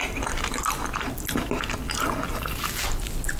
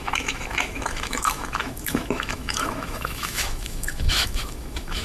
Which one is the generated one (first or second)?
second